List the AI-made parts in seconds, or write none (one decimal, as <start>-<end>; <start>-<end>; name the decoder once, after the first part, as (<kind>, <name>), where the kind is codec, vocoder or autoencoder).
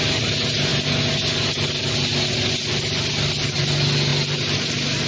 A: none